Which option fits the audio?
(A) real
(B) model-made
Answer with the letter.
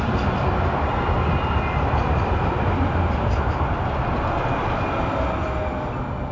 A